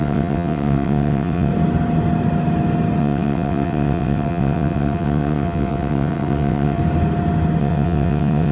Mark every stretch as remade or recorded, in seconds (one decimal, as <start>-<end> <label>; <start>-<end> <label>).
0.0-1.5 remade; 1.5-3.0 recorded; 3.0-6.8 remade; 6.8-7.6 recorded; 7.6-8.5 remade